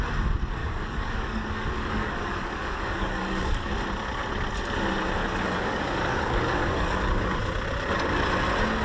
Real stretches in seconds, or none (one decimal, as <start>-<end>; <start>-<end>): 0.0-0.6; 3.7-5.2; 7.4-8.8